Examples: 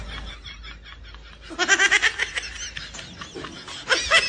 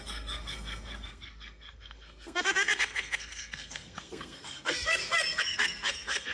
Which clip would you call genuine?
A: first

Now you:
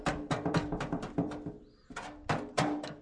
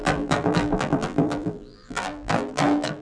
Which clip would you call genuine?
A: first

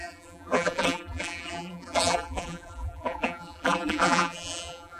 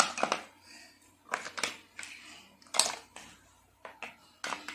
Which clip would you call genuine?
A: second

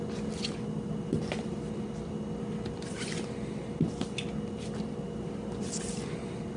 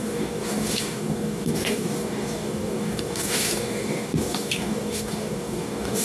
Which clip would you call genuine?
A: first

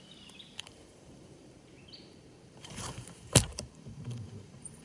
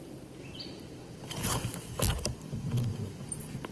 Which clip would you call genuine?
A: second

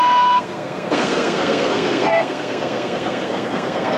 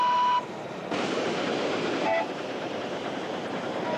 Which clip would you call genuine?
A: second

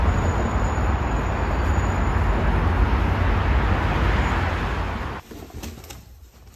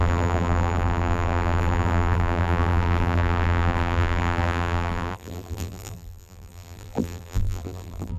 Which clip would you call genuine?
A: first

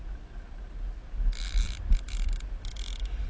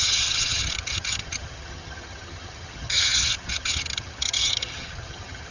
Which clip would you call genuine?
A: first